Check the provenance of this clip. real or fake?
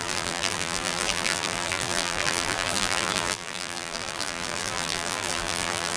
fake